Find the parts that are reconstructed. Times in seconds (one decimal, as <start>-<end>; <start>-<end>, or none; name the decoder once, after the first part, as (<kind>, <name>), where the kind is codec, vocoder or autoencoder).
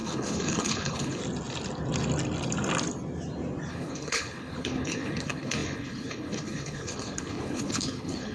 0.0-1.2 (codec, HILCodec); 3.7-8.3